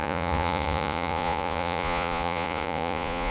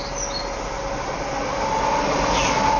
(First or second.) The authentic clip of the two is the second